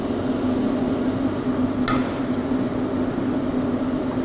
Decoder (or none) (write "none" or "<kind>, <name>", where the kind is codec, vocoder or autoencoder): none